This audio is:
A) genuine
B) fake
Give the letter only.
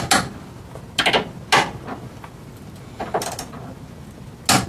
A